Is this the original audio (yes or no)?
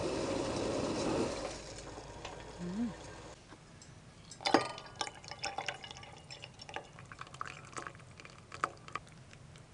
yes